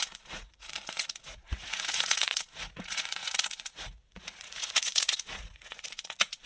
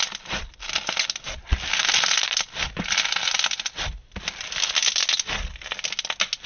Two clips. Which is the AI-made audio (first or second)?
first